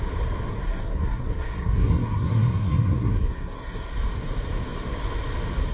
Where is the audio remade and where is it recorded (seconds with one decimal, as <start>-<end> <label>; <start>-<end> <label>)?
0.0-0.5 recorded; 0.5-3.9 remade; 3.9-5.7 recorded